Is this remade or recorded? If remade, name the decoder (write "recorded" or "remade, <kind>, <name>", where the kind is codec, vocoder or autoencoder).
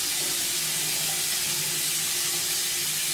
recorded